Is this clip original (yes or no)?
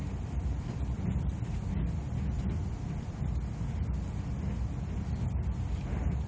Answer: yes